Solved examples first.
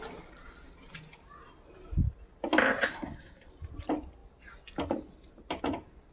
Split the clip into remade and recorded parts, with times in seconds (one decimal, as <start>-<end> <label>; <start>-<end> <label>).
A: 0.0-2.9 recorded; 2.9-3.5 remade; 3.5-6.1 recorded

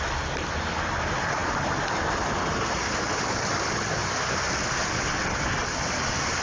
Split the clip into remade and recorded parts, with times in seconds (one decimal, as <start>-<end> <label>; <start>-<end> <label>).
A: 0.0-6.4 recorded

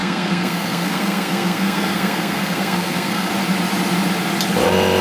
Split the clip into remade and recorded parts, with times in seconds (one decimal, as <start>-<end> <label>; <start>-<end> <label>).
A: 0.0-3.3 remade; 3.3-5.0 recorded